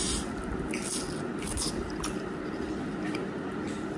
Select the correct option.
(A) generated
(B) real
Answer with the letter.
B